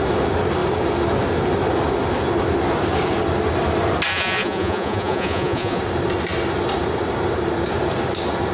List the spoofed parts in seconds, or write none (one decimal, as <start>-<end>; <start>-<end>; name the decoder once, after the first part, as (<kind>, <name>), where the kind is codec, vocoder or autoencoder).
4.1-5.8 (vocoder, Vocos)